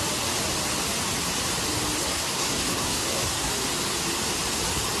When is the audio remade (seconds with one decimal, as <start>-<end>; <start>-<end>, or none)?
2.0-3.5